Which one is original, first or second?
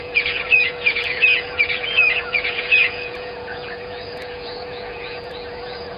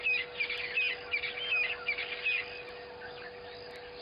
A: second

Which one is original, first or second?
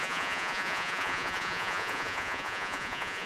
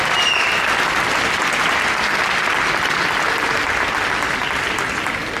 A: second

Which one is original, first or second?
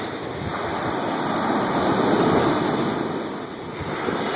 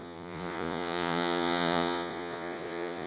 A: first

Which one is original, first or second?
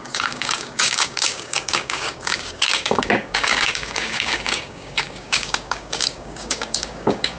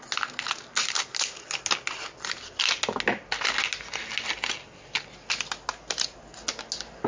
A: second